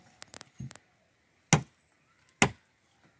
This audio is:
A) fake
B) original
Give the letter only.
B